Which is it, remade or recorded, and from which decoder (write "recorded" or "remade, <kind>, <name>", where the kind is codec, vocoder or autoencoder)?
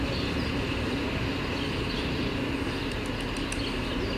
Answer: recorded